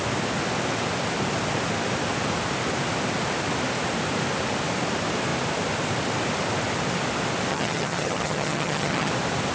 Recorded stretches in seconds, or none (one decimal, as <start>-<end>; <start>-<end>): 0.0-7.5; 9.1-9.5